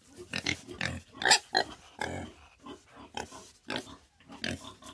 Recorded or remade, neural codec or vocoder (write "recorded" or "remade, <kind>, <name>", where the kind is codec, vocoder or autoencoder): recorded